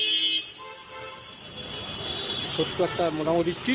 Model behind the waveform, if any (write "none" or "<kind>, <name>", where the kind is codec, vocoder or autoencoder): none